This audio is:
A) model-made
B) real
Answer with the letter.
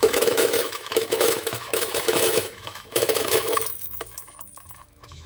A